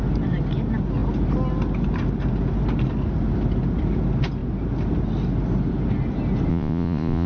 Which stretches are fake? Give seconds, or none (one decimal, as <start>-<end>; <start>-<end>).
6.5-7.3

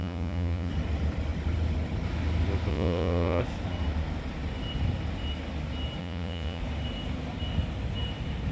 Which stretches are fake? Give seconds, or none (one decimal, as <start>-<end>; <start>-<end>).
0.0-0.7; 2.7-3.4; 6.0-6.6